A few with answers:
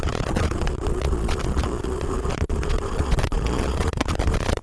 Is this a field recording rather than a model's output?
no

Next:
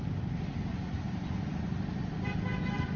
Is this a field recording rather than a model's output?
yes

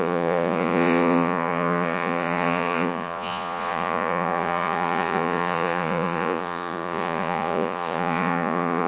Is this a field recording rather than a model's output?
no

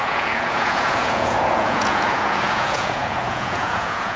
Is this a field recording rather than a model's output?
no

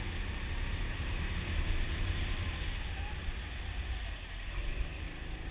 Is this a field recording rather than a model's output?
yes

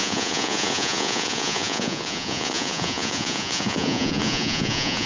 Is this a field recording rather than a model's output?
no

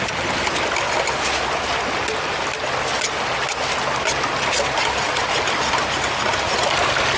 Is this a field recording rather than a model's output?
yes